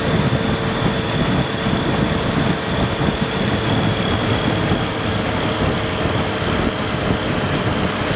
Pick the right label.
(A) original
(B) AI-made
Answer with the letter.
A